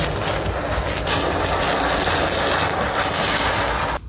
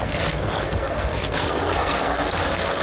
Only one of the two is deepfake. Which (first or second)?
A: second